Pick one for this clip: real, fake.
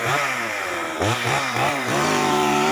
fake